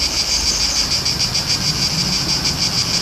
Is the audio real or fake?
real